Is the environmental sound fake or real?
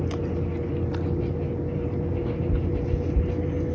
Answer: real